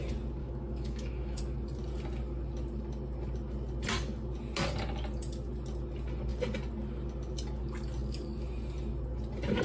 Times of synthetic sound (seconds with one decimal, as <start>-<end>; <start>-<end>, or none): 0.4-1.4